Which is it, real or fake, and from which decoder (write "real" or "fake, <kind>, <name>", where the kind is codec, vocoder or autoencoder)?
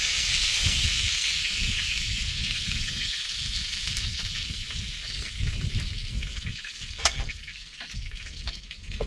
fake, codec, SNAC